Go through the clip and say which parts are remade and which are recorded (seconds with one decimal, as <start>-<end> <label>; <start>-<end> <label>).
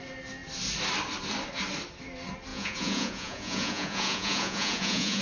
0.0-2.5 recorded; 2.5-5.2 remade